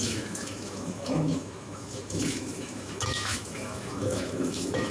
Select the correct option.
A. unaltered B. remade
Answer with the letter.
B